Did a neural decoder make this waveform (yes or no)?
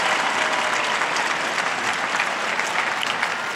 no